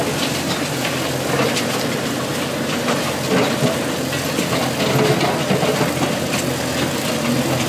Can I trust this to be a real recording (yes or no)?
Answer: yes